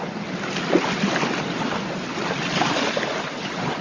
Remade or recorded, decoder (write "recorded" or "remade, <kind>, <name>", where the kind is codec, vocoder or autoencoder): recorded